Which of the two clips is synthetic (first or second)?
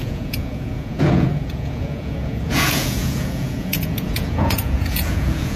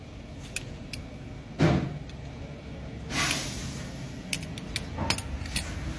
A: first